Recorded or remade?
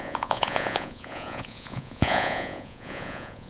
remade